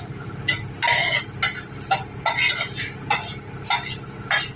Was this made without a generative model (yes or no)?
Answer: yes